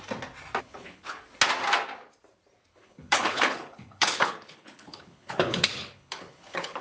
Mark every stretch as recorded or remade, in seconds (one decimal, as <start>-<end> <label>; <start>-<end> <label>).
0.0-0.6 recorded; 0.6-1.2 remade; 1.2-2.7 recorded; 2.7-6.8 remade